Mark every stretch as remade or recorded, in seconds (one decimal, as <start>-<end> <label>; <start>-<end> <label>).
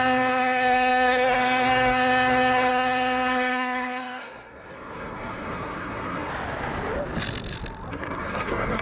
0.0-6.3 remade; 6.3-7.9 recorded; 7.9-8.8 remade